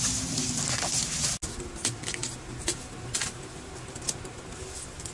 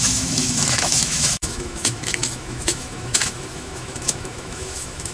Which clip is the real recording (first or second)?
first